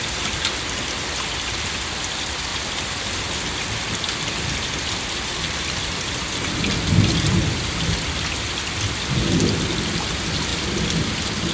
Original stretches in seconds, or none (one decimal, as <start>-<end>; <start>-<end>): 0.0-2.5; 3.2-11.5